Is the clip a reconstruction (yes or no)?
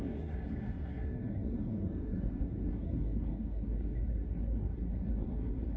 yes